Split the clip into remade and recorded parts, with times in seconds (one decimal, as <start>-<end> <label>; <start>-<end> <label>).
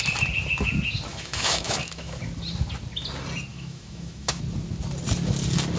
0.0-1.1 recorded; 1.1-2.2 remade; 2.2-3.5 recorded; 3.5-4.4 remade; 4.4-5.8 recorded